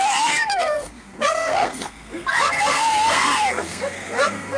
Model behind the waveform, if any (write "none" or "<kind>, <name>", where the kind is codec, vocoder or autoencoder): codec, SNAC